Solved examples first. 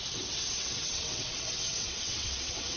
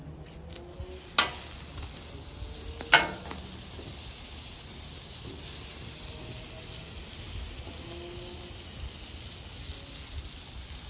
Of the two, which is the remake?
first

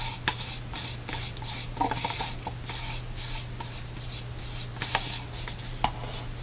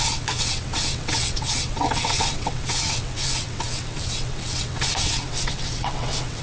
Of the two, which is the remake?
second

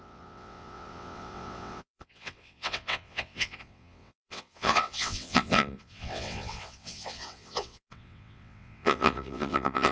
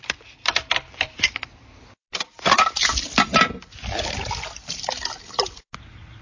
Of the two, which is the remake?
first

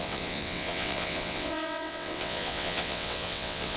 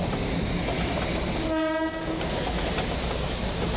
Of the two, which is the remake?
first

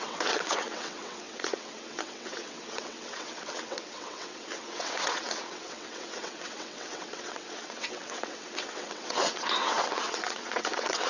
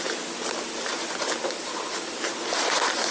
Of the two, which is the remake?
first